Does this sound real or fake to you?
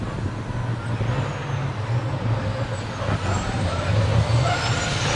real